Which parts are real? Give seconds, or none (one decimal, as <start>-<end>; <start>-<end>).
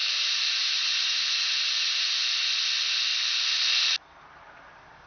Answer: 2.2-4.2